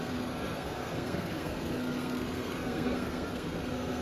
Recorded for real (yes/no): no